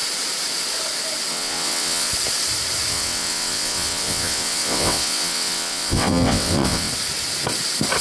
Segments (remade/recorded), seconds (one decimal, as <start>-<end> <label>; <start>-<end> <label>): 0.0-1.3 recorded; 1.3-2.1 remade; 2.1-2.9 recorded; 2.9-6.9 remade; 6.9-8.0 recorded